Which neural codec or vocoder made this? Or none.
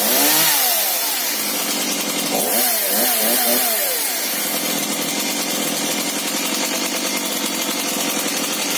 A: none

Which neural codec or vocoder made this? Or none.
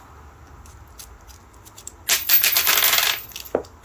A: none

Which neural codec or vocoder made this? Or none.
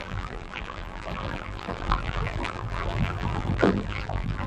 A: vocoder, BigVGAN v2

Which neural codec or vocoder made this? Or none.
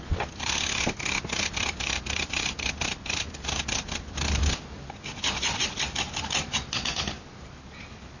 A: vocoder, BigVGAN v2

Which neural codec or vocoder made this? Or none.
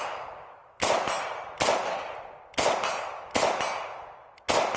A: none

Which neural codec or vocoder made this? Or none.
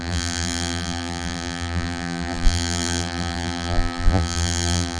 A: vocoder, BigVGAN v2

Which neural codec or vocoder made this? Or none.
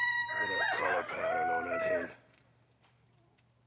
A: vocoder, BigVGAN v2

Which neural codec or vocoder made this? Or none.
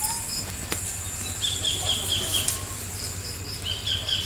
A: none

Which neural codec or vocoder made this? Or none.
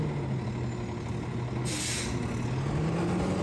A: none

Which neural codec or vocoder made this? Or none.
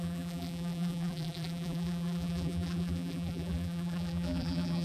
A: vocoder, BigVGAN v2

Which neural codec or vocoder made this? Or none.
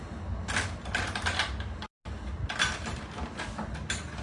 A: none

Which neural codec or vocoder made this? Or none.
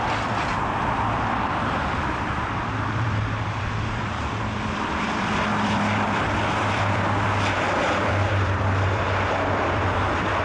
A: vocoder, BigVGAN v2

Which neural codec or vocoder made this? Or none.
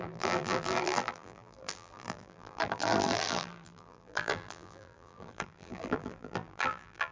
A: vocoder, BigVGAN v2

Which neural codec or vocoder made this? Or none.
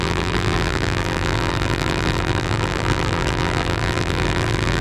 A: vocoder, BigVGAN v2